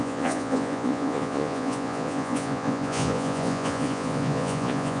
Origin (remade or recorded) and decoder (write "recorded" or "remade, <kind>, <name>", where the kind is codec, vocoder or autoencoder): remade, vocoder, Vocos